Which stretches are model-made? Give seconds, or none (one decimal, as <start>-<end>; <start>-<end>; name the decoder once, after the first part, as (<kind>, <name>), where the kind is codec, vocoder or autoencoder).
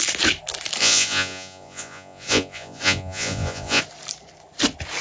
0.8-3.8 (vocoder, Vocos)